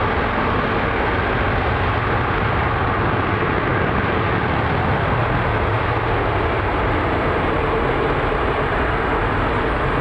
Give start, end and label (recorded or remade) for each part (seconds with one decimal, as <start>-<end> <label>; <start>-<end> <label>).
0.0-10.0 recorded